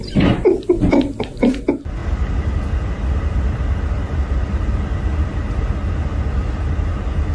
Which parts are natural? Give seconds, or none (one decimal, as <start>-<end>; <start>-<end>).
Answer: 0.0-7.3